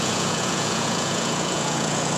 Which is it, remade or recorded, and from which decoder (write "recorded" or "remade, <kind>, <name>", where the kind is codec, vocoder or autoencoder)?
remade, vocoder, Vocos